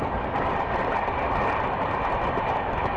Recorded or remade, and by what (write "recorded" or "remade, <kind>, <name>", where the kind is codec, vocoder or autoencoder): recorded